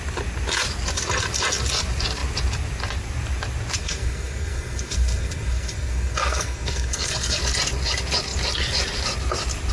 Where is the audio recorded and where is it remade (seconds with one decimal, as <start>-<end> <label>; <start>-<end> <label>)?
0.0-3.8 recorded; 3.8-7.4 remade; 7.4-9.7 recorded